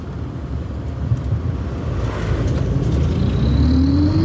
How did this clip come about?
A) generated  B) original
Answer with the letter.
B